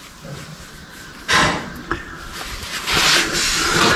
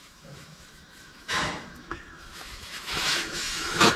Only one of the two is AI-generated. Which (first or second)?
second